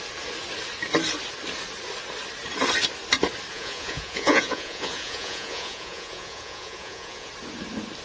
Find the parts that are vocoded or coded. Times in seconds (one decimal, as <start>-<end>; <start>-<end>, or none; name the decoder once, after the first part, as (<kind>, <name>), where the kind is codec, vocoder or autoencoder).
3.5-7.3 (vocoder, Vocos)